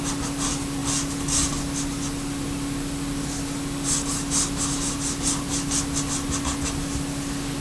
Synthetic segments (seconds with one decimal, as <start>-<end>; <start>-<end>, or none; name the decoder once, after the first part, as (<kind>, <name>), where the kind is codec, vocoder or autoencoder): none